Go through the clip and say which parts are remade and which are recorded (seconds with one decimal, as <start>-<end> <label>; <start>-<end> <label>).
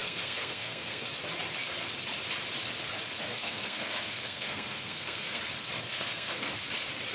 0.0-1.1 remade; 1.1-3.3 recorded; 3.3-5.4 remade; 5.4-5.9 recorded; 5.9-6.5 remade; 6.5-7.1 recorded